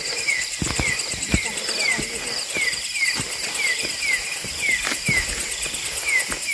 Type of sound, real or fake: real